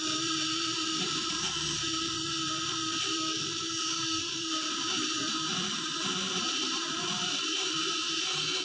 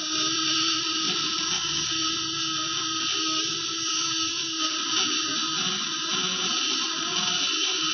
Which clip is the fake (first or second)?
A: first